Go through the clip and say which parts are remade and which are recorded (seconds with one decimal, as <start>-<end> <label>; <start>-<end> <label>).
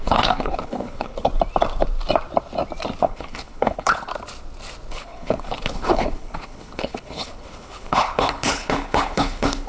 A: 0.0-1.3 remade; 1.3-3.0 recorded; 3.0-4.1 remade; 4.1-4.9 recorded; 4.9-9.7 remade